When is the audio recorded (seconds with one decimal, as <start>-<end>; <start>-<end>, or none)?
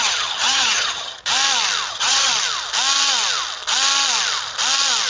1.2-1.9; 2.3-5.1